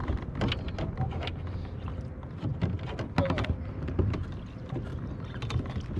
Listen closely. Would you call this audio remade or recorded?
recorded